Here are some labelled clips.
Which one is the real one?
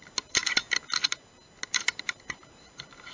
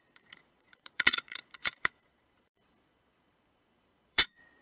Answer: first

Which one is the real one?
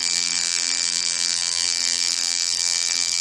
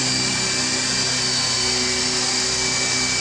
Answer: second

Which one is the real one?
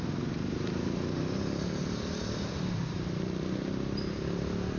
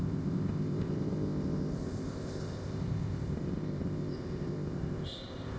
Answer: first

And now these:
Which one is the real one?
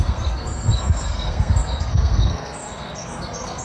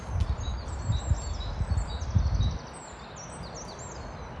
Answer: second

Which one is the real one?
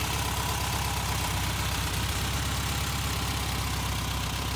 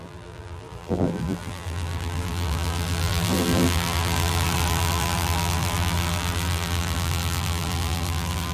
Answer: first